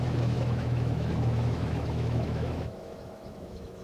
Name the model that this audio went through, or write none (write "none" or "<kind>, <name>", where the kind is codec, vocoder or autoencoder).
autoencoder, DAC-VAE